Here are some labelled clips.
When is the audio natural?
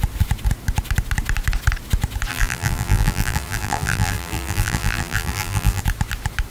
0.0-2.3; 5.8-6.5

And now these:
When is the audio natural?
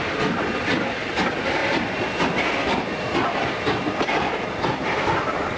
none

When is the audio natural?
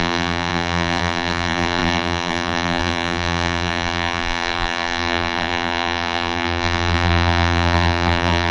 none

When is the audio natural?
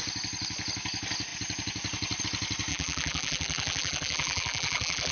0.0-2.7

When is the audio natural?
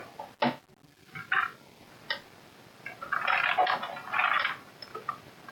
0.0-5.5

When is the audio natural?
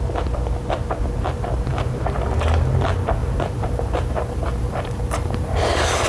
0.0-1.7; 2.3-3.2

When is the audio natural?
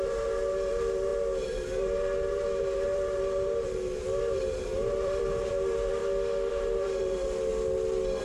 6.0-6.5; 7.5-8.2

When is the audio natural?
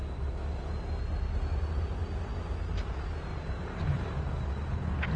0.0-3.3; 3.8-5.2